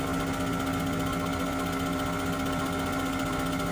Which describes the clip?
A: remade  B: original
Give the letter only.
B